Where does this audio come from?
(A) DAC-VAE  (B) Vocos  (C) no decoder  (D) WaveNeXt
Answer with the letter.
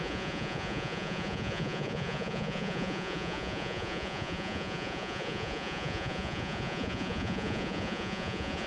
B